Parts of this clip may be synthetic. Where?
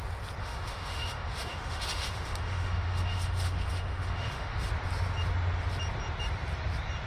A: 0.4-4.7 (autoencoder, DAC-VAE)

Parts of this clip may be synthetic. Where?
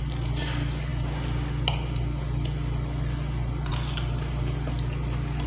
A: none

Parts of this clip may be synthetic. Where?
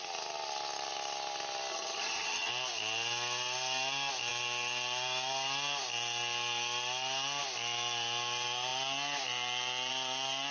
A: 1.7-2.5 (vocoder, HiFi-GAN)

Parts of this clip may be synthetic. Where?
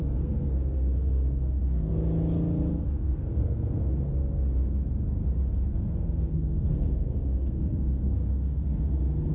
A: 0.0-1.9 (codec, SNAC); 2.7-4.1; 5.7-8.8